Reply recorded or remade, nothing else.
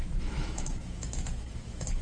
remade